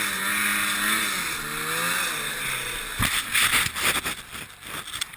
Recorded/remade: recorded